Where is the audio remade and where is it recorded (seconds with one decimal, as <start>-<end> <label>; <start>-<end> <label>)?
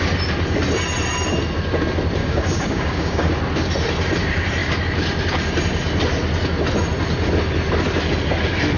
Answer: 0.0-2.2 recorded; 2.2-3.3 remade; 3.3-8.8 recorded